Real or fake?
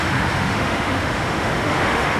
fake